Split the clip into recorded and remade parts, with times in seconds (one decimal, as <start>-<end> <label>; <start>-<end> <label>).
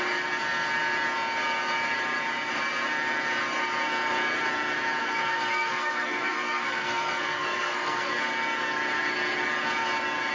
0.0-5.0 recorded; 5.0-8.2 remade; 8.2-10.3 recorded